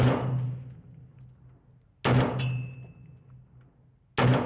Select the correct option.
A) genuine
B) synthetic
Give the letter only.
A